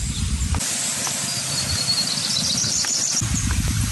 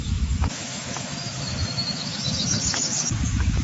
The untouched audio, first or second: first